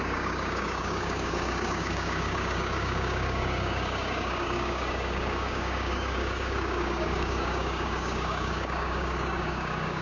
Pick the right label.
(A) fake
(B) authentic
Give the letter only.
A